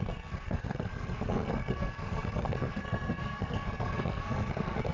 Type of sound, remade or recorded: remade